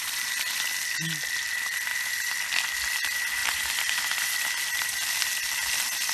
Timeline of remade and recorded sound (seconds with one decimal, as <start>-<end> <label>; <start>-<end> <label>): 0.0-1.9 recorded; 1.9-2.5 remade; 2.5-3.4 recorded; 3.4-4.0 remade; 4.0-6.1 recorded

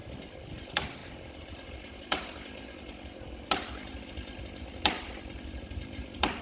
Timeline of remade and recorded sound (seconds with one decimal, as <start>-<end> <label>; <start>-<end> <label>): 0.0-6.4 remade

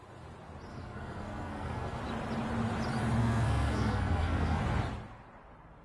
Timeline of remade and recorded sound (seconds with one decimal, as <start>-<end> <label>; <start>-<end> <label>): 0.0-0.7 recorded; 0.7-2.0 remade; 2.0-3.2 recorded; 3.2-4.6 remade; 4.6-5.8 recorded

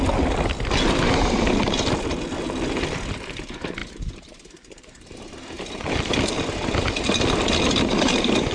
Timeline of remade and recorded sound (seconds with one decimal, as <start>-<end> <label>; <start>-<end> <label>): 0.0-3.8 recorded; 3.8-6.3 remade; 6.3-8.5 recorded